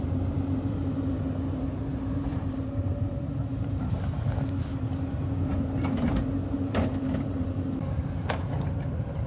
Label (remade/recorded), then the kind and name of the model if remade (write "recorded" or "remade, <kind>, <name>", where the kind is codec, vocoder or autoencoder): remade, vocoder, BigVGAN v2